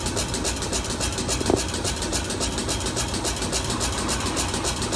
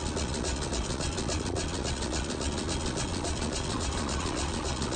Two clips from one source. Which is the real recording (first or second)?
first